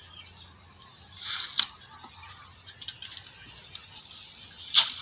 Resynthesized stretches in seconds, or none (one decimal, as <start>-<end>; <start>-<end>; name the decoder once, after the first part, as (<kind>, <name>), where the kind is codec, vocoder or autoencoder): none

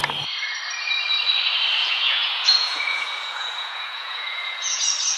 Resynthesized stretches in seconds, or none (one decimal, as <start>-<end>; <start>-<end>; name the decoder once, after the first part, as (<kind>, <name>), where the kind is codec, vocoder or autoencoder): 1.8-4.8 (vocoder, Vocos)

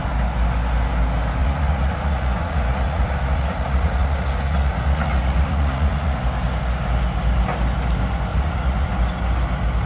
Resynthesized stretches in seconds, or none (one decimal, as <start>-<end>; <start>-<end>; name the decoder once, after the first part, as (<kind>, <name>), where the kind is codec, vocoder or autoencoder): 1.4-6.2 (vocoder, Vocos); 8.3-8.9

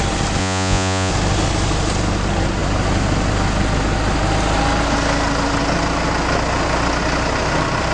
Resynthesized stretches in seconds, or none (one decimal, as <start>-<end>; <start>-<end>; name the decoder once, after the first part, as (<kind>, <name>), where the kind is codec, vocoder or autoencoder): 0.4-1.1 (vocoder, Vocos)

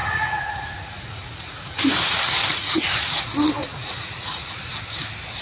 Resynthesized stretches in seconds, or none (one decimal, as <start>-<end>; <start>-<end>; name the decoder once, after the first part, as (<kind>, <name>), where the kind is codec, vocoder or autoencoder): 0.0-3.2 (vocoder, Vocos); 3.6-4.6

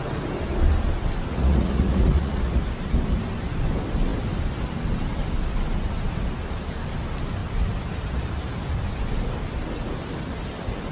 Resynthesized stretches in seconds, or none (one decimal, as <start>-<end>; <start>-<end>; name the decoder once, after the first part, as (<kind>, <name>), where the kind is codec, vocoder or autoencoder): 1.3-2.6 (vocoder, Vocos)

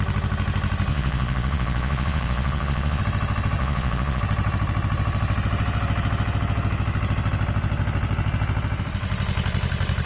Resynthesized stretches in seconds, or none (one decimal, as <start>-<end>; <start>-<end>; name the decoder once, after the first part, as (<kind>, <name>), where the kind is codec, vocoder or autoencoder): 0.9-3.0 (vocoder, Vocos); 3.6-4.2